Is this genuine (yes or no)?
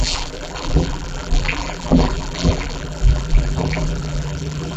no